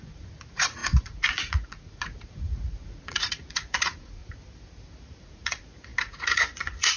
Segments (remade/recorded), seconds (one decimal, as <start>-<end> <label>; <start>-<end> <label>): 0.0-4.2 remade; 4.2-5.2 recorded; 5.2-7.0 remade